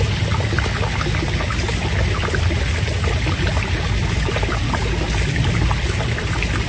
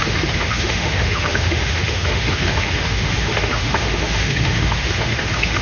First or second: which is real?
first